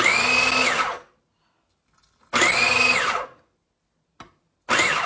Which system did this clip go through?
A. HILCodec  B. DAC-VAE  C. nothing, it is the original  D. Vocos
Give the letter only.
C